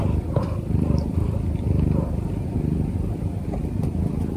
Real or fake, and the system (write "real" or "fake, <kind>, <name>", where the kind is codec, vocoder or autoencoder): real